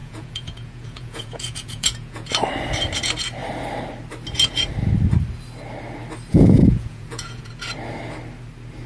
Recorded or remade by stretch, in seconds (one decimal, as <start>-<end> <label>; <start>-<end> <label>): 0.0-2.3 remade; 2.3-6.3 recorded; 6.3-7.5 remade; 7.5-8.9 recorded